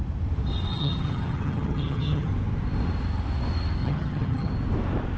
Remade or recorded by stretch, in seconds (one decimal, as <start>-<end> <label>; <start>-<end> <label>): 0.0-0.7 recorded; 0.7-2.3 remade; 2.3-3.8 recorded; 3.8-4.5 remade; 4.5-5.2 recorded